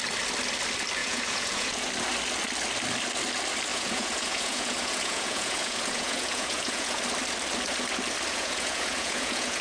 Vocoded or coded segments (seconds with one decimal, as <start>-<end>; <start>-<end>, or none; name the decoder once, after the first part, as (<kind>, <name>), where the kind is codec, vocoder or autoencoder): 1.0-1.9 (vocoder, Vocos); 3.7-7.0; 8.3-9.6